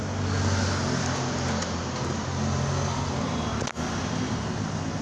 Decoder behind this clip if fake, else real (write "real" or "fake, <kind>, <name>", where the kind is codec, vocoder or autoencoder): real